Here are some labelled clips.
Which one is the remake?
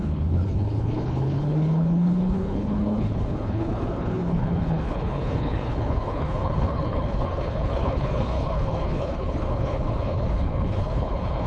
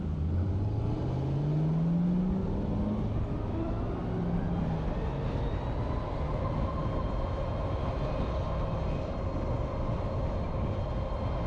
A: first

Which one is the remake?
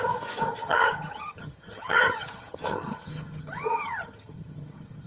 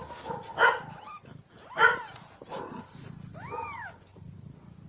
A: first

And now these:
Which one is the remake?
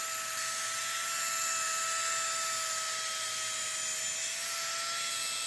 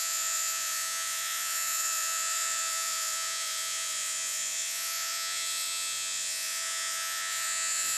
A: second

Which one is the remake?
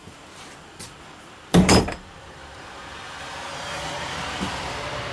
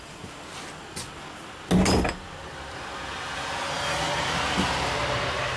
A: first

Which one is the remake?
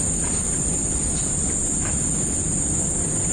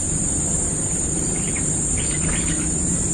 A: second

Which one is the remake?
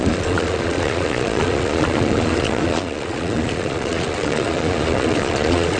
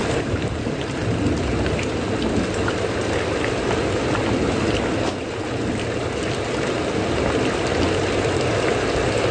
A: first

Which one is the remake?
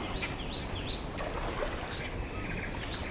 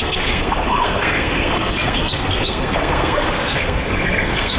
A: second